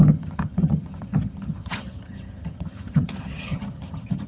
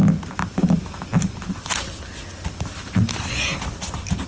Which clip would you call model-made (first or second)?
first